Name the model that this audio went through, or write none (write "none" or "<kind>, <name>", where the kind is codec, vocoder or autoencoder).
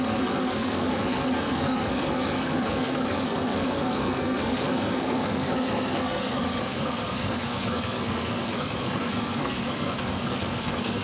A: codec, SNAC